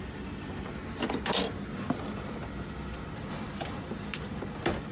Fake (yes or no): no